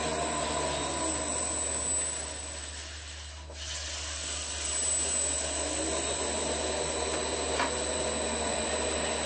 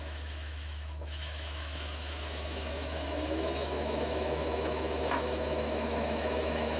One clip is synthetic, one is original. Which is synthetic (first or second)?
second